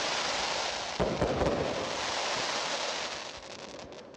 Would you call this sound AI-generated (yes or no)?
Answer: no